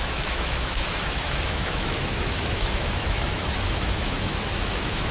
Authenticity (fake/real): fake